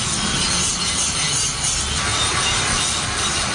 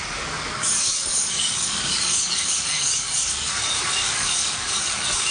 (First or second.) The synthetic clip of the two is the second